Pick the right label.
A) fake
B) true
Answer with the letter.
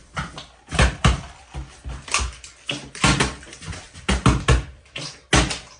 B